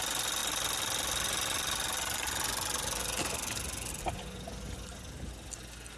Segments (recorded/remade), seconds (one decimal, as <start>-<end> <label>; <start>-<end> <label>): 0.0-6.0 recorded